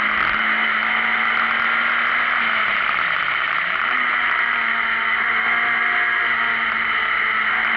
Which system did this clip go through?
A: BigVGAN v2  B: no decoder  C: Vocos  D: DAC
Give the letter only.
B